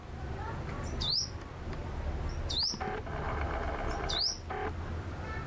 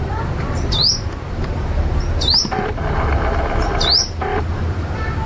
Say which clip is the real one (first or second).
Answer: first